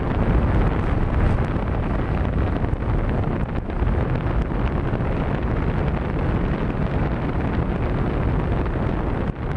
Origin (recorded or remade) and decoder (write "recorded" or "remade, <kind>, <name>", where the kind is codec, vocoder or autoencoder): recorded